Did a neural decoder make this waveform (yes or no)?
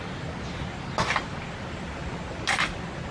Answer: no